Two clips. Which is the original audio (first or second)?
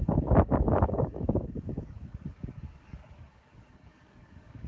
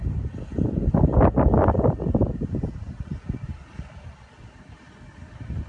second